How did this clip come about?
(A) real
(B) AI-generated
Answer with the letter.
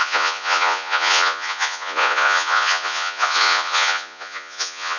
B